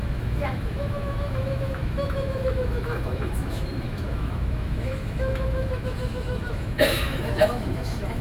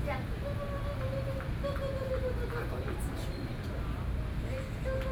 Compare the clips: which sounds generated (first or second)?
first